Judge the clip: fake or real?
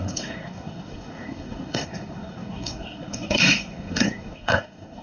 fake